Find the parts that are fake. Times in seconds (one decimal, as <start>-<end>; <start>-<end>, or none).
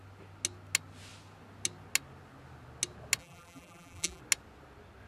3.2-4.2